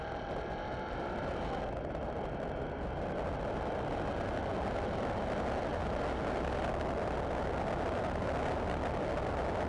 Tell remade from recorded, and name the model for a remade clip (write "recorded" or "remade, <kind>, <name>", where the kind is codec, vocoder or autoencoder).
recorded